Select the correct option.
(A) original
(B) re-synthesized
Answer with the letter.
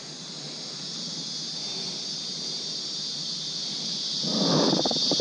A